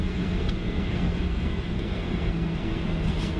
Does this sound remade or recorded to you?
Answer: remade